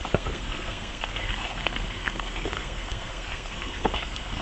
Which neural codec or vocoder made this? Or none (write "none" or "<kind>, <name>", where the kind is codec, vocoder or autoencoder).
codec, SNAC